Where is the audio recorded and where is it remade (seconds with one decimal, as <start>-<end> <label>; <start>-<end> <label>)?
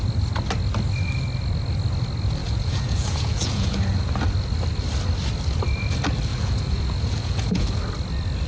0.0-2.4 recorded; 2.4-4.1 remade; 4.1-6.3 recorded; 6.3-7.8 remade; 7.8-8.5 recorded